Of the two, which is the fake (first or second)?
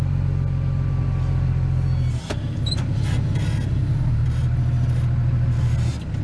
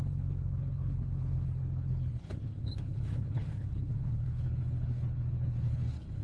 second